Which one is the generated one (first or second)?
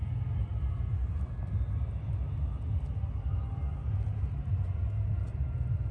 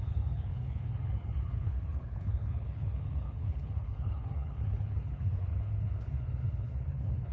second